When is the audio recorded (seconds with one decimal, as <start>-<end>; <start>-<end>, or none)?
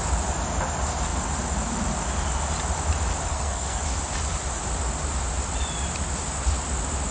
0.0-3.3; 3.8-7.1